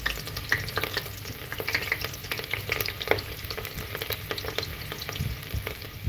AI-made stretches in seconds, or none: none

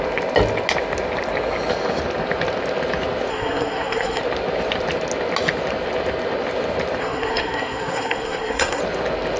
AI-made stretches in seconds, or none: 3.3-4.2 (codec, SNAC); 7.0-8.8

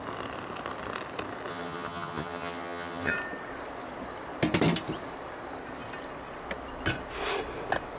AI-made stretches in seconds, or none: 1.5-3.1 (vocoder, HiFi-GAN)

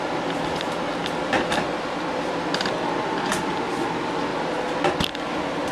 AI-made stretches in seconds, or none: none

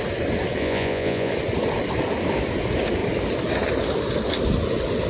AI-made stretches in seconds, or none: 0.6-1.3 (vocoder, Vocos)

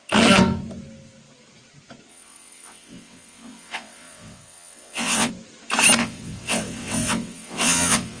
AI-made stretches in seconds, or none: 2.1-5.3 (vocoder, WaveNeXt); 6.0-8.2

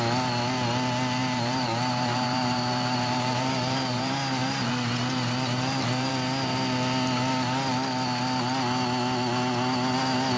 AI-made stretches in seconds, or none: 1.2-6.1 (vocoder, BigVGAN v2)